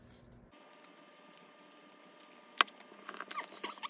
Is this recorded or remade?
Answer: recorded